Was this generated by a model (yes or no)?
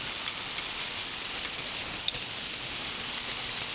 no